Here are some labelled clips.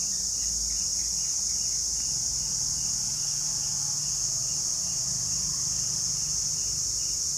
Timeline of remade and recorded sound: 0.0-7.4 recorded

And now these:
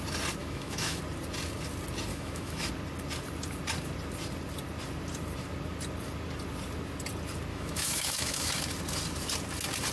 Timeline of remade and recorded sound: 0.0-0.4 recorded; 0.4-1.0 remade; 1.0-2.1 recorded; 2.1-2.7 remade; 2.7-7.5 recorded; 7.5-8.6 remade; 8.6-9.9 recorded

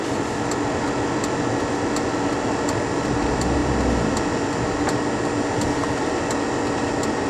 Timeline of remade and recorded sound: 0.0-7.3 recorded

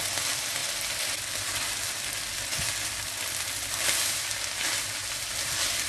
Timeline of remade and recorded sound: 0.0-5.9 recorded

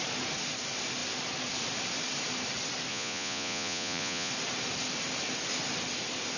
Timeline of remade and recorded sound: 0.0-2.9 recorded; 2.9-4.3 remade; 4.3-6.4 recorded

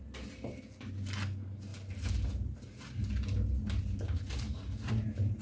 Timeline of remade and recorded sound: 0.0-5.4 recorded